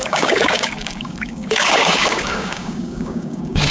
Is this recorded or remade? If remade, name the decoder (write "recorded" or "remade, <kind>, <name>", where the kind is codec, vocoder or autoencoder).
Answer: remade, codec, DAC